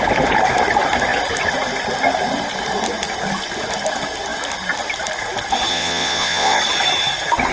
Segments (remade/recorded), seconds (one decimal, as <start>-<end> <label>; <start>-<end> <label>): 0.0-5.7 recorded; 5.7-6.6 remade; 6.6-7.5 recorded